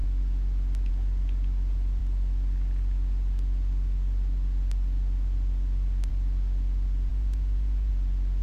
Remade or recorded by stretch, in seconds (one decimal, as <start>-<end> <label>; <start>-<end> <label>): 0.0-7.1 recorded; 7.1-7.9 remade; 7.9-8.4 recorded